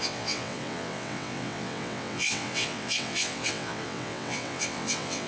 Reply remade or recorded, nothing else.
remade